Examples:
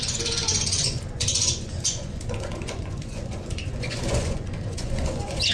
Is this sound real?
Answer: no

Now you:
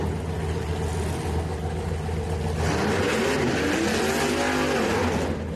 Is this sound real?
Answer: yes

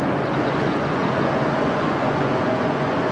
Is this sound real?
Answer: no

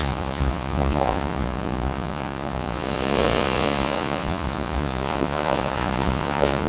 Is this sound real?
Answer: no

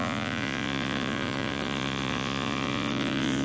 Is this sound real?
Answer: no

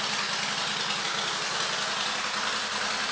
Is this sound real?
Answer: yes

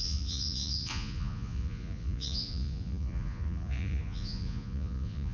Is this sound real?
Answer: no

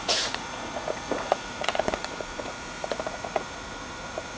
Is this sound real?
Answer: no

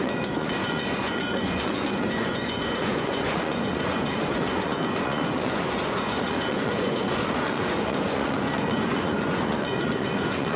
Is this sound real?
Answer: no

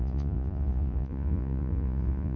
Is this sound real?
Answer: no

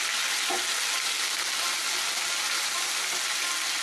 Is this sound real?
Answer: yes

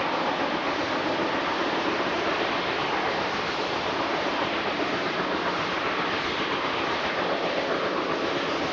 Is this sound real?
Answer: yes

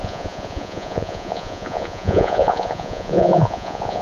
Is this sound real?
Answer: no